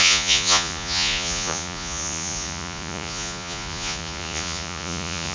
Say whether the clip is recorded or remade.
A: remade